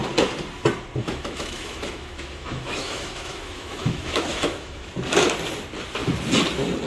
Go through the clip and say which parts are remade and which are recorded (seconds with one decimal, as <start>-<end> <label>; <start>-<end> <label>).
0.0-1.0 recorded; 1.0-4.9 remade; 4.9-6.9 recorded